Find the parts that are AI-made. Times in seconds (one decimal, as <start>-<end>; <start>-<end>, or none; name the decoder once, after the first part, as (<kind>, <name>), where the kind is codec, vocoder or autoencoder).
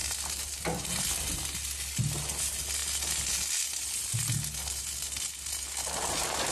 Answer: none